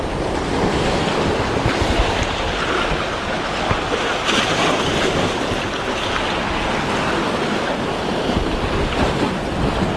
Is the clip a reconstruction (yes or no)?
no